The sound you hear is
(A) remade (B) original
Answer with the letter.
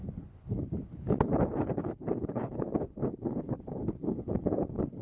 A